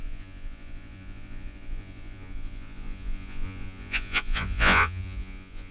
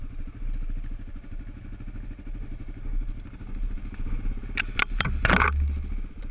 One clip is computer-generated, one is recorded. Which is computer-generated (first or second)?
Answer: first